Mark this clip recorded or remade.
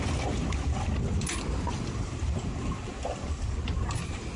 recorded